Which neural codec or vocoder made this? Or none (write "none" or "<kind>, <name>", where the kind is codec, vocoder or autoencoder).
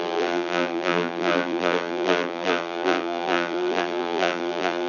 vocoder, BigVGAN v2